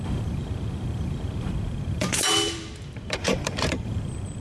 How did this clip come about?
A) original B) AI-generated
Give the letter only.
B